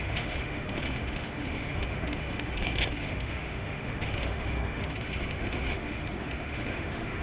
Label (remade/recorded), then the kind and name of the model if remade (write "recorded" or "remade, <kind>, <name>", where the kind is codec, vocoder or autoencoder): remade, autoencoder, DAC-VAE